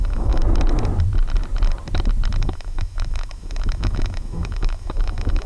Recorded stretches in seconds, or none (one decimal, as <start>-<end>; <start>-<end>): 0.4-2.4